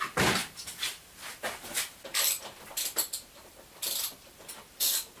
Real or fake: fake